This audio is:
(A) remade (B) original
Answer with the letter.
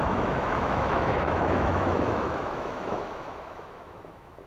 A